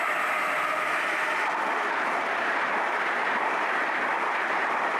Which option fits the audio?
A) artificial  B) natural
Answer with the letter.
A